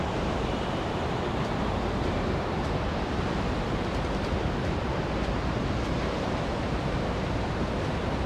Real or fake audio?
fake